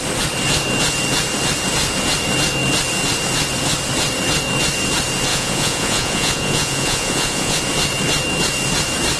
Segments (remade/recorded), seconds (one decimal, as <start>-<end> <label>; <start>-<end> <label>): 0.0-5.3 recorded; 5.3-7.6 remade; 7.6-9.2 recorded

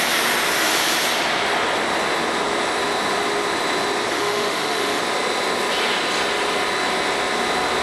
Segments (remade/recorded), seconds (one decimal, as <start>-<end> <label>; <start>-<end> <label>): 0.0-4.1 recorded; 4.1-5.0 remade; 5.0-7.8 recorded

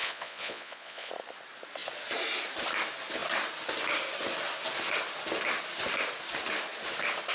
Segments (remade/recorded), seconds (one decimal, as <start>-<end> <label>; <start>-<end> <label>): 0.0-1.1 remade; 1.1-7.3 recorded

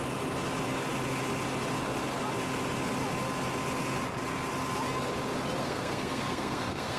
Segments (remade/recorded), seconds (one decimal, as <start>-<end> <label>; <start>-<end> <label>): 0.0-5.6 recorded; 5.6-7.0 remade

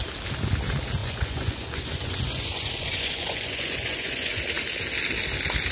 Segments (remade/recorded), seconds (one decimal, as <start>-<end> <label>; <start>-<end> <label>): 0.0-1.0 recorded; 1.0-4.4 remade; 4.4-5.7 recorded

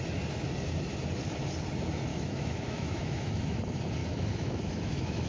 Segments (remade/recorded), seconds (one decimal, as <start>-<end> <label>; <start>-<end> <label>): 0.0-2.1 recorded; 2.1-3.6 remade; 3.6-4.0 recorded; 4.0-5.3 remade